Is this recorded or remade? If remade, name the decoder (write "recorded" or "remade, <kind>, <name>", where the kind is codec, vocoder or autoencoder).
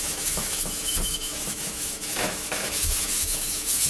remade, autoencoder, DAC-VAE